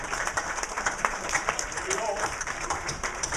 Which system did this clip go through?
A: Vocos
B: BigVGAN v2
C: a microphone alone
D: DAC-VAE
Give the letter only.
B